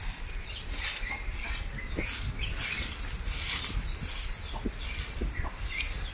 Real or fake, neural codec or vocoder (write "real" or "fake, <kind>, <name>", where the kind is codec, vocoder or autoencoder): real